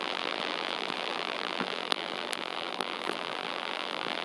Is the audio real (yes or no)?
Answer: no